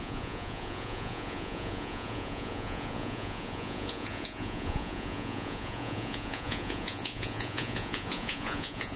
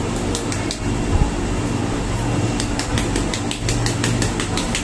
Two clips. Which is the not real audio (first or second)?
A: first